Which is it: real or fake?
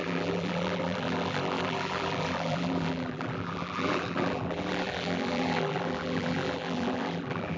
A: fake